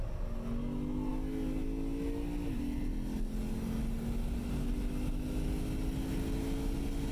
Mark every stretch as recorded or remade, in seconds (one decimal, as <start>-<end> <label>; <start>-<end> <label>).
0.0-7.1 recorded